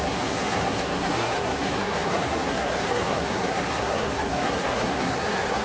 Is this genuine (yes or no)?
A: no